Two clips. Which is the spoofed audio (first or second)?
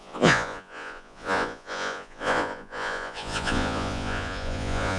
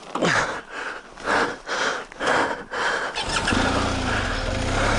first